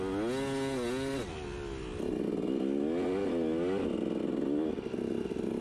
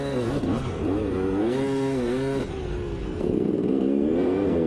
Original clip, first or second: first